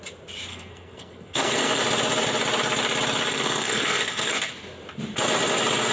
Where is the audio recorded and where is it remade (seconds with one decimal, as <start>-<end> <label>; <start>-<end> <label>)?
0.0-0.5 recorded; 0.5-1.8 remade; 1.8-3.3 recorded; 3.3-4.5 remade; 4.5-5.9 recorded

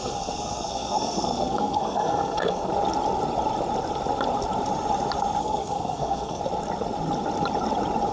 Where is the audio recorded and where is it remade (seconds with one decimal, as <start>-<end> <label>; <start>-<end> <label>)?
0.0-2.7 remade; 2.7-5.4 recorded; 5.4-6.4 remade; 6.4-8.1 recorded

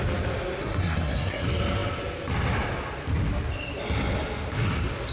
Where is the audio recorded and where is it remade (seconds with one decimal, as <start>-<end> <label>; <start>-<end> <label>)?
0.0-0.6 recorded; 0.6-1.4 remade; 1.4-5.1 recorded